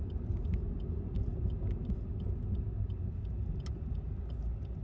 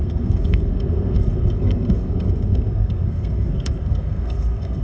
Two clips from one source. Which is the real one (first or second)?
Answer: first